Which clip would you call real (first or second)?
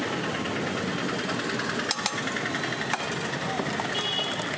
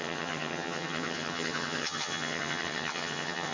first